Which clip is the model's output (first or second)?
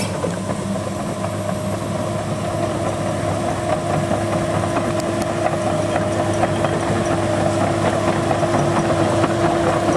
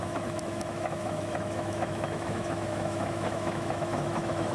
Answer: second